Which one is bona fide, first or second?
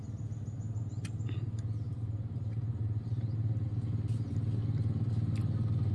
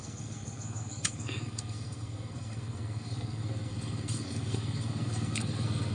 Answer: first